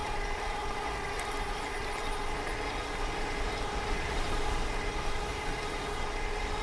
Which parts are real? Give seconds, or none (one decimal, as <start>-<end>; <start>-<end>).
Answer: 0.0-6.6